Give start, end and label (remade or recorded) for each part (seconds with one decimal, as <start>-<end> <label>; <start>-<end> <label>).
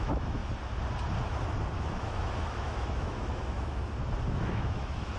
0.0-0.4 remade; 0.4-1.7 recorded; 1.7-3.8 remade; 3.8-4.3 recorded; 4.3-5.2 remade